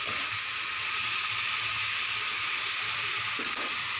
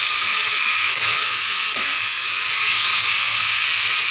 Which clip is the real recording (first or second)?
first